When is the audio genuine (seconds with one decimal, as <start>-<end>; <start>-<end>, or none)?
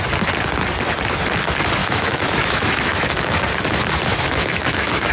0.0-1.8; 3.4-4.1